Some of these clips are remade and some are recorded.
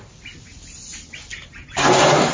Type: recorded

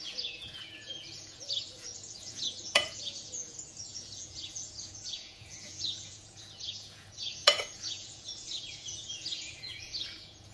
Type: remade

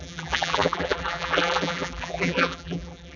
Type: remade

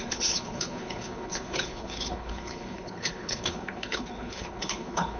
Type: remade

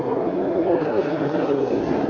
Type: remade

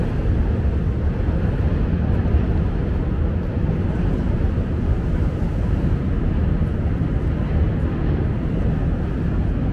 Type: recorded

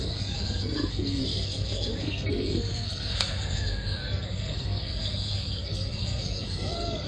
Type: remade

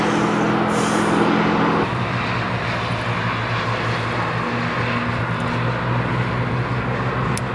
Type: recorded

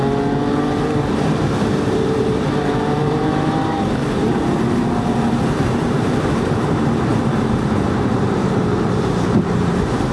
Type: remade